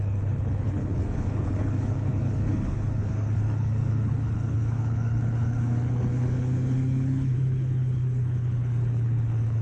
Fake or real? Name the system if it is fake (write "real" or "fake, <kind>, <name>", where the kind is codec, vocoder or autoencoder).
fake, codec, HILCodec